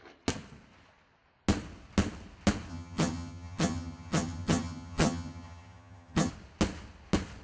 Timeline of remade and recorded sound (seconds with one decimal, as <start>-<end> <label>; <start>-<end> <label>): 0.0-2.7 recorded; 2.7-6.3 remade; 6.3-7.4 recorded